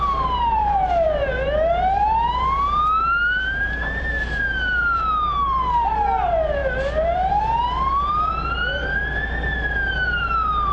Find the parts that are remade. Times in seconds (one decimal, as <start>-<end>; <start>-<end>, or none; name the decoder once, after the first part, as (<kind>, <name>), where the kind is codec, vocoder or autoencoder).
0.0-10.7 (vocoder, BigVGAN v2)